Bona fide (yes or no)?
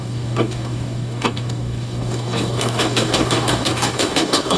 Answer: no